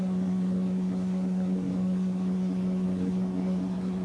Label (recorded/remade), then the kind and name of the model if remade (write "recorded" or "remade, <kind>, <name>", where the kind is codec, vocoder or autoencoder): remade, codec, SNAC